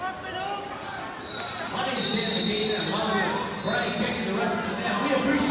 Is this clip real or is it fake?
real